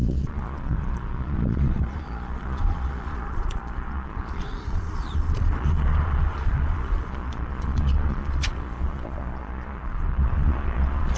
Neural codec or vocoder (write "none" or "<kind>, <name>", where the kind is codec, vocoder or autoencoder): vocoder, Vocos